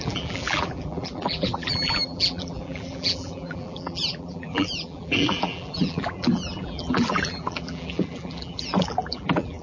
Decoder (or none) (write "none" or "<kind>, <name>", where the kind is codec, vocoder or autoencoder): vocoder, BigVGAN v2